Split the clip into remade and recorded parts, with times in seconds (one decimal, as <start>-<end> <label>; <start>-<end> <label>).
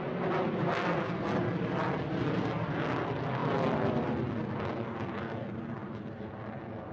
0.0-5.8 recorded; 5.8-6.3 remade; 6.3-6.9 recorded